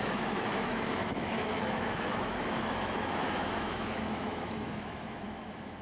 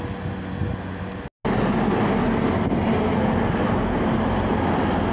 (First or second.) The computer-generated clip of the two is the first